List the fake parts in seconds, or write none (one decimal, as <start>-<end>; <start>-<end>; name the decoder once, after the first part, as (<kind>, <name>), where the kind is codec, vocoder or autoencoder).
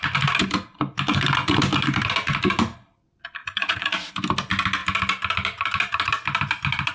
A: 3.4-4.1 (vocoder, Vocos)